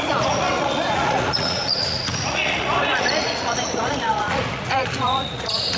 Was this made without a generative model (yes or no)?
no